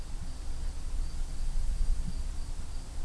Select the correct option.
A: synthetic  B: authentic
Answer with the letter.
B